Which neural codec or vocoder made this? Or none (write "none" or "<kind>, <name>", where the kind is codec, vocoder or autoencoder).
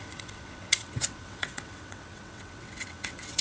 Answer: vocoder, WaveNeXt